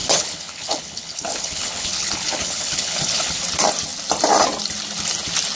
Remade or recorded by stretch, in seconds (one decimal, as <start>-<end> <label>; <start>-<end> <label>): 0.0-3.4 remade; 3.4-5.6 recorded